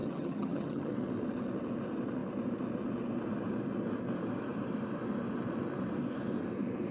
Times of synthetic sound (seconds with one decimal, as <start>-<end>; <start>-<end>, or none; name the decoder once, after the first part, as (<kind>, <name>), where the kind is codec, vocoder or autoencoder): 0.0-0.9 (vocoder, HiFi-GAN)